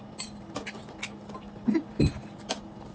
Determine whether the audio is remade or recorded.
recorded